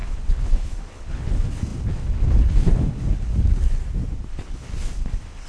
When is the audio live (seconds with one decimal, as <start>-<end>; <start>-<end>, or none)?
3.8-4.3